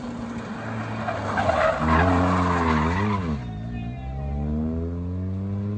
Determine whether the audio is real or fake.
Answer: real